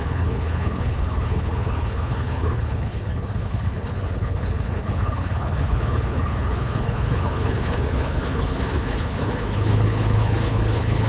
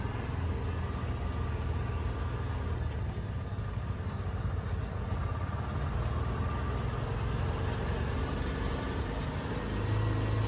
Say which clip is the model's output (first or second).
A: first